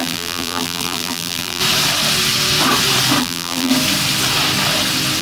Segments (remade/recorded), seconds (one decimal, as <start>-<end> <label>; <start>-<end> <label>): 0.0-1.6 remade; 1.6-3.2 recorded; 3.2-3.7 remade; 3.7-5.2 recorded